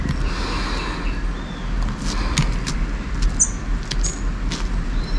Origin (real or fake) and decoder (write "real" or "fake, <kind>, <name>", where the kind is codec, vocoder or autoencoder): real